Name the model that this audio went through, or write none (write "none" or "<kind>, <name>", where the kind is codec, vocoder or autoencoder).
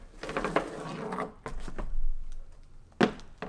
none